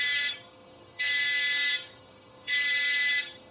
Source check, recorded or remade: remade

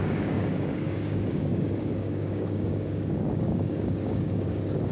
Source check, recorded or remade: remade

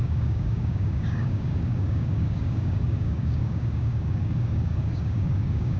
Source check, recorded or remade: remade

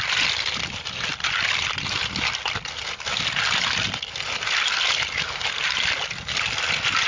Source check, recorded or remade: recorded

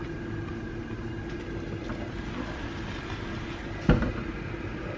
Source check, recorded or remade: recorded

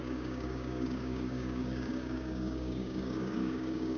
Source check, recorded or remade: remade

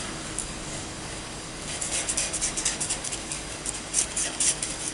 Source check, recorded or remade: remade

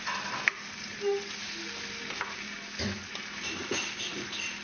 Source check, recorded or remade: recorded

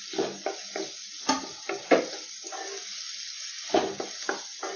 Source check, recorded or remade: recorded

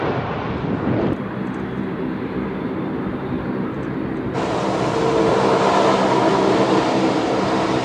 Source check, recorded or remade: recorded